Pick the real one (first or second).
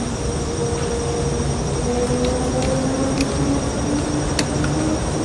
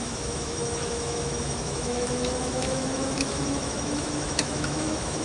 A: first